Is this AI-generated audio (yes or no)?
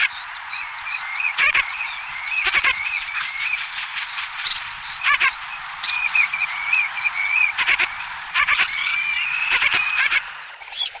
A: yes